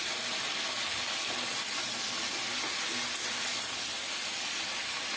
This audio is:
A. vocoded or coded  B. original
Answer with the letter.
B